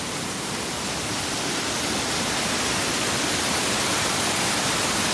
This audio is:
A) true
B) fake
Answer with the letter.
A